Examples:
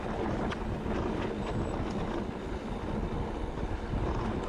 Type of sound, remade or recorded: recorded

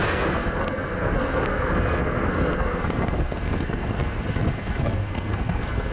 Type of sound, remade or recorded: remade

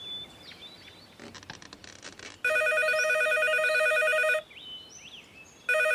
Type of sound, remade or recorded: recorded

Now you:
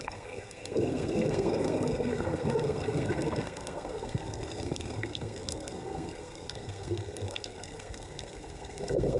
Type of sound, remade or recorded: remade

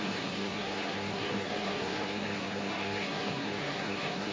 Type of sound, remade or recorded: remade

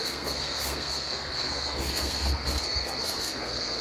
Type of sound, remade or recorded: remade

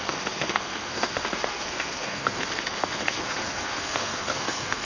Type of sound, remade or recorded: remade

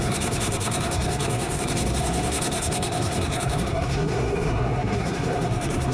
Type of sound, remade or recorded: remade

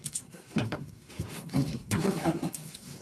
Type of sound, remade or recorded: remade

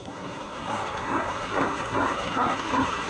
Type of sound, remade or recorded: remade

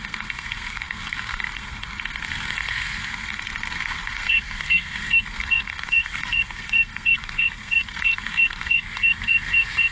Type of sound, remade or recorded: remade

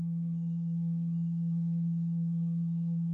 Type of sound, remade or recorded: remade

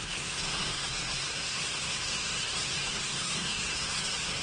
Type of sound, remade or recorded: remade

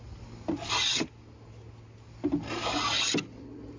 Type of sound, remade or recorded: recorded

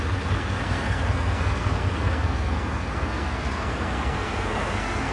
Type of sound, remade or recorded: remade